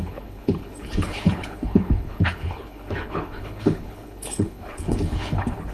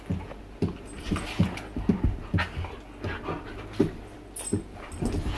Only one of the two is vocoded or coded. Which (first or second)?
first